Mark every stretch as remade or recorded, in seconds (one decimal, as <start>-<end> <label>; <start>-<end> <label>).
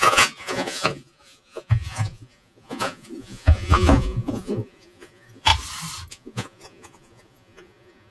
0.0-5.5 remade; 5.5-6.1 recorded; 6.1-8.1 remade